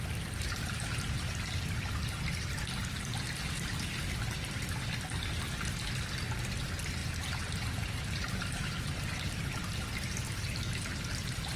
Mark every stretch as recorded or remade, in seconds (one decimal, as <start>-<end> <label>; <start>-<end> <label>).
0.0-7.0 recorded; 7.0-8.8 remade; 8.8-11.6 recorded